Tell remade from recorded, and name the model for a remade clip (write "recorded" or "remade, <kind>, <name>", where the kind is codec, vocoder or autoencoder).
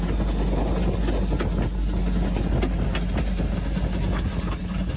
recorded